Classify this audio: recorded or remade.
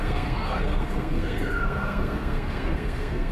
remade